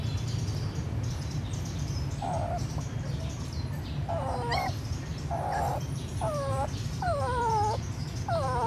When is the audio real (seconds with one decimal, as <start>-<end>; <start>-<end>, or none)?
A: 0.0-5.1